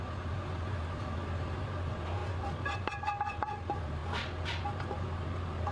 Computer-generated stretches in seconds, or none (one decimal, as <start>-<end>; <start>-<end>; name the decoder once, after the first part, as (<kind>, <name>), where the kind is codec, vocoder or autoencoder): 0.0-4.0 (vocoder, BigVGAN v2); 4.7-5.7